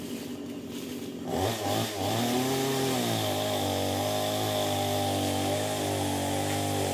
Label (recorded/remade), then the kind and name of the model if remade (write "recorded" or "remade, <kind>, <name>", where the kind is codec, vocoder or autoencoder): recorded